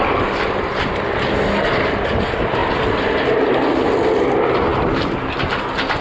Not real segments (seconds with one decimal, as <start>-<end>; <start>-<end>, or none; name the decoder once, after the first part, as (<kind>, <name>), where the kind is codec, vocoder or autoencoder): none